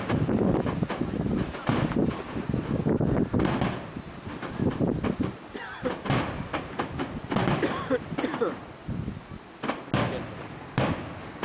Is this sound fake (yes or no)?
no